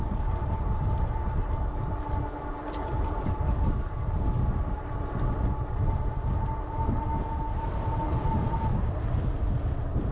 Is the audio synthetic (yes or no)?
no